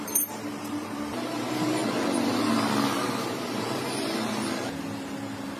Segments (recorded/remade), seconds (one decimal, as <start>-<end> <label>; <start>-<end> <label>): 0.0-1.8 remade; 1.8-3.2 recorded; 3.2-4.1 remade; 4.1-5.6 recorded